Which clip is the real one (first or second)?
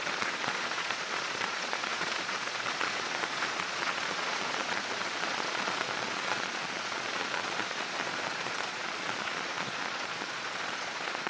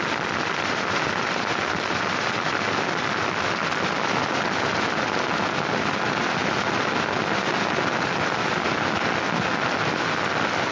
second